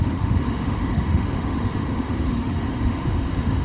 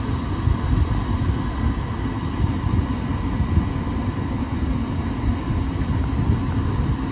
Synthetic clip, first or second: first